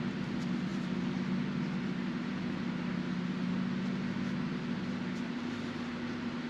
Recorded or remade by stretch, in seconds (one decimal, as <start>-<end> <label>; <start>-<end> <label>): 0.0-6.5 recorded